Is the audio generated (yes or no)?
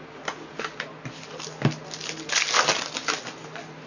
no